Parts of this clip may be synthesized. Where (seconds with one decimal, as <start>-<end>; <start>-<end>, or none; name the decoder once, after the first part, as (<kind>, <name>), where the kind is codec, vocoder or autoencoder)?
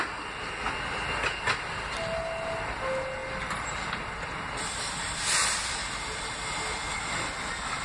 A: none